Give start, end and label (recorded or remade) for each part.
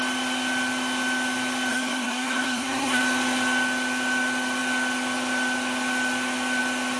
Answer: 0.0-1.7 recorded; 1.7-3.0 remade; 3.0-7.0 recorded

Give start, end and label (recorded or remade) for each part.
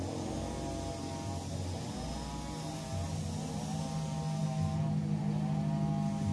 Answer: 0.0-6.3 recorded